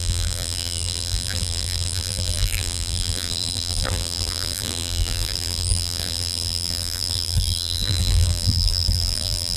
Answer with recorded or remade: remade